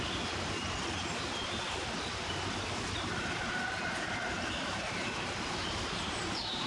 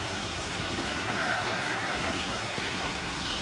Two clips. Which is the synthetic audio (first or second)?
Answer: second